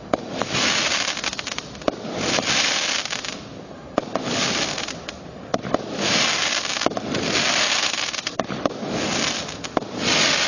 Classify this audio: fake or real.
real